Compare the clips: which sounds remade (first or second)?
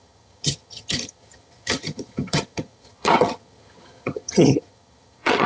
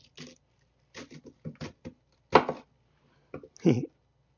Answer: first